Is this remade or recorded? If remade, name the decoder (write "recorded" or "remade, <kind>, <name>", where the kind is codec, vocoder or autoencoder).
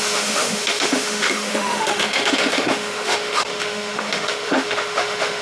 remade, autoencoder, DAC-VAE